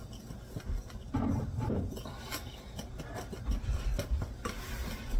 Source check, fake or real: real